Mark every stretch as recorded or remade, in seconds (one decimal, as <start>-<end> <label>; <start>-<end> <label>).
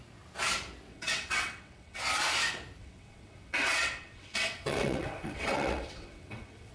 0.0-0.9 recorded; 0.9-2.0 remade; 2.0-2.8 recorded; 2.8-6.7 remade